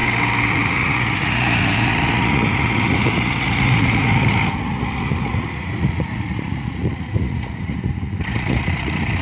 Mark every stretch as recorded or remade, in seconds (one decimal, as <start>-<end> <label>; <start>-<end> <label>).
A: 0.0-0.5 recorded; 0.5-9.2 remade